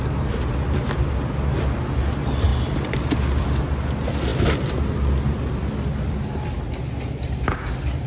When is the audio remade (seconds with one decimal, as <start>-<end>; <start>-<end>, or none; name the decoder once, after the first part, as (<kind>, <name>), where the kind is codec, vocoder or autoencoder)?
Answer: none